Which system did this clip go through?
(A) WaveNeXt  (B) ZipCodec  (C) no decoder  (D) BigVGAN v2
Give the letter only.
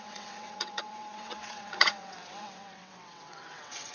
A